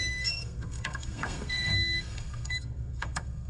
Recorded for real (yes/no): no